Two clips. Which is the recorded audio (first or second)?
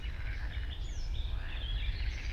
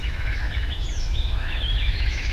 first